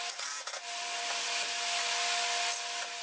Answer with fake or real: real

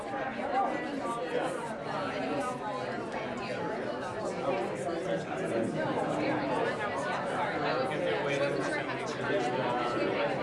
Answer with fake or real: real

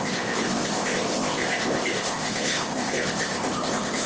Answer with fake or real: fake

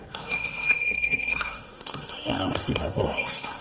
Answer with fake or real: fake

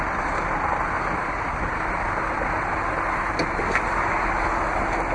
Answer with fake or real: real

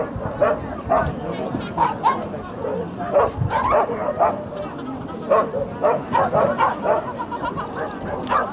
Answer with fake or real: real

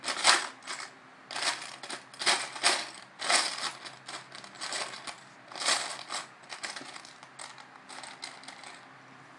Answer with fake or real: real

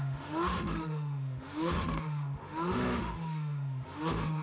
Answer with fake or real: fake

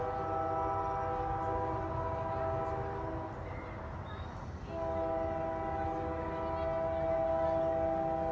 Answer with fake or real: real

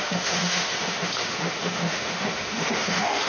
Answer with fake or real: fake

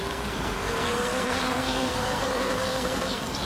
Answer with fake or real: fake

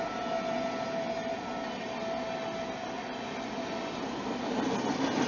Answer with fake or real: real